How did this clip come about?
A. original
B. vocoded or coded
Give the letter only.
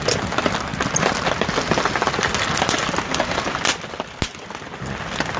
A